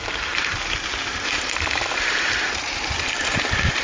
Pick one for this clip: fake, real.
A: fake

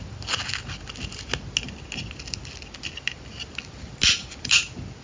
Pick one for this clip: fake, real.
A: real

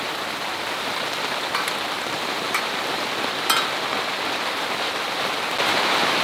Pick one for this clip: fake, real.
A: real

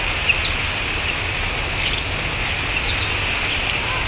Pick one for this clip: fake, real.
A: real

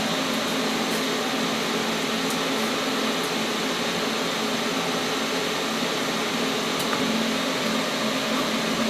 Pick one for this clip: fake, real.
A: real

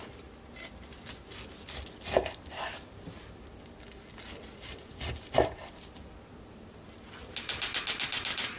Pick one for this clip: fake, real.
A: real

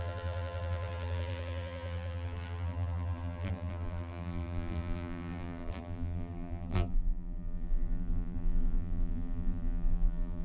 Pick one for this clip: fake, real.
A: fake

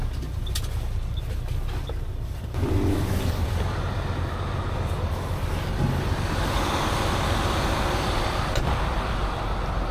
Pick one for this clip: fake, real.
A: real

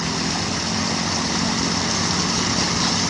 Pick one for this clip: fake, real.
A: real